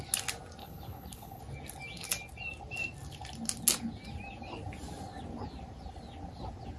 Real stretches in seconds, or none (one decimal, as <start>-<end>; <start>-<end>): 0.0-0.6; 1.4-6.8